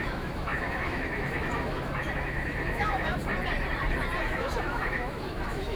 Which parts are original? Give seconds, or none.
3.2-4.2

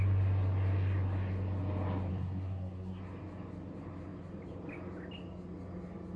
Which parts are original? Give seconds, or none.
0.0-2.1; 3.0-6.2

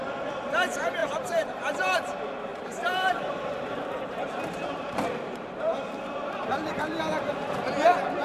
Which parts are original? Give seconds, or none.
0.0-1.0; 1.6-2.5; 7.0-8.2

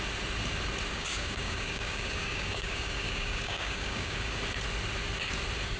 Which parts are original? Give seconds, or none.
0.0-0.9; 4.4-5.8

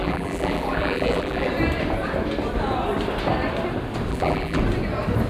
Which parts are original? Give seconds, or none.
1.5-4.1; 4.6-5.3

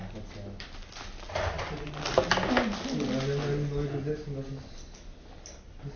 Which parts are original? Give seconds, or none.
0.0-6.0